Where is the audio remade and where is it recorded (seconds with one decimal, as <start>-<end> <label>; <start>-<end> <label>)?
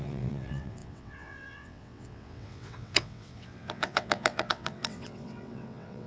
0.0-6.1 remade